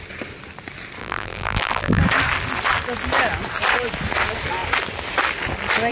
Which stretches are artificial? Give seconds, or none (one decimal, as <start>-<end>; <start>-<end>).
1.0-2.0